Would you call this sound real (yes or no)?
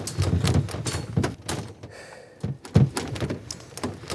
yes